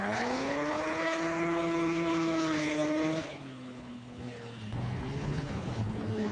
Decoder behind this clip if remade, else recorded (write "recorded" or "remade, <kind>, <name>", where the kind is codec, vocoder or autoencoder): remade, codec, HILCodec